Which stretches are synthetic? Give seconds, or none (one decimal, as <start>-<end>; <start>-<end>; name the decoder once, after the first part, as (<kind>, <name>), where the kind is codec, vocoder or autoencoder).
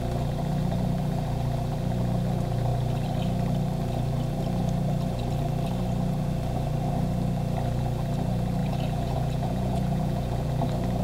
8.6-10.6 (vocoder, Vocos)